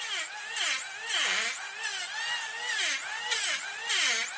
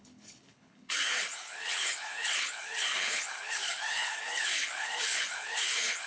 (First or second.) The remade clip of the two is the second